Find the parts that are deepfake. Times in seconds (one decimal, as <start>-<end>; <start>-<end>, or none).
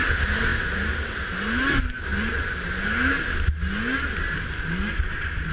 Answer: none